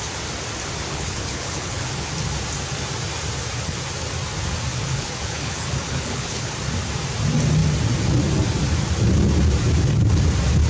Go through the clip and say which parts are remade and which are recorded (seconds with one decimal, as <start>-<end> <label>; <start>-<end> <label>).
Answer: 0.0-0.9 recorded; 0.9-2.1 remade; 2.1-4.7 recorded; 4.7-6.5 remade; 6.5-10.7 recorded